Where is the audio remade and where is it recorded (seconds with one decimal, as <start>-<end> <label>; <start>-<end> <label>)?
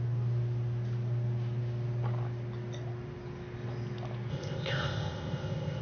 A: 0.0-4.3 recorded; 4.3-5.8 remade